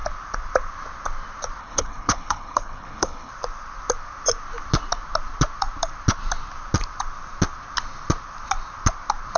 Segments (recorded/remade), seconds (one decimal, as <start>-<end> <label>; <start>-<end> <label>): 0.0-1.6 recorded; 1.6-3.3 remade; 3.3-9.4 recorded